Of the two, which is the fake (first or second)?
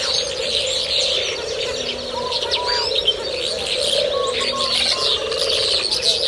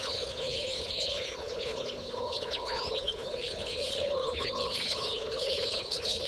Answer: second